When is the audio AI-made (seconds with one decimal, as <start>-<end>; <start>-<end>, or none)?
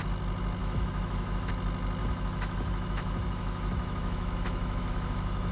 0.6-1.5; 2.0-5.5